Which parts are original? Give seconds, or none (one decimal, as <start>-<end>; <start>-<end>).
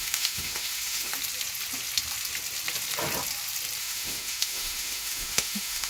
1.1-3.8